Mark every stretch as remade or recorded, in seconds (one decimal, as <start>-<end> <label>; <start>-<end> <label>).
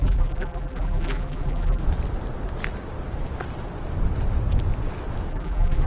0.0-1.8 remade; 1.8-5.3 recorded; 5.3-5.9 remade